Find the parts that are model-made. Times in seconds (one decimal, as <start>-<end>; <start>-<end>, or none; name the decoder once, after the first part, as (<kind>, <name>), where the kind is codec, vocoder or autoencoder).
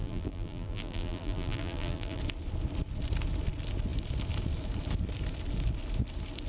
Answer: 0.0-2.2 (vocoder, BigVGAN v2)